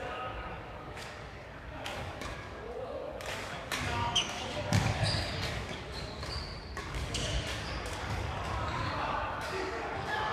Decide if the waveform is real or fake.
fake